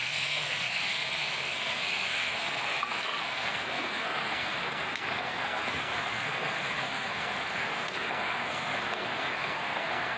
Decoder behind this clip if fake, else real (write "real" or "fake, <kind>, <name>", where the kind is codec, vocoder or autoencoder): fake, codec, SNAC